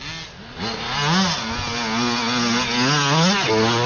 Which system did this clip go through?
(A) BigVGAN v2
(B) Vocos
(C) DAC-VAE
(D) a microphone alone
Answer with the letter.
D